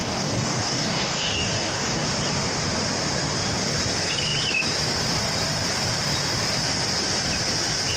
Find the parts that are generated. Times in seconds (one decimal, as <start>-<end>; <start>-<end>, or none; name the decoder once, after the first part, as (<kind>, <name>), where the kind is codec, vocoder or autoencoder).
0.0-2.1 (codec, DAC)